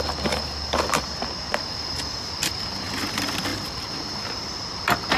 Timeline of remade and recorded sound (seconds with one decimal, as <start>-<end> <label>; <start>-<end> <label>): 0.0-5.2 recorded